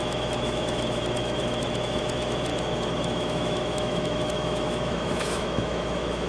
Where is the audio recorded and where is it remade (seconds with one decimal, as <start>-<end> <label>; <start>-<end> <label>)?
0.0-2.5 remade; 2.5-3.0 recorded; 3.0-6.3 remade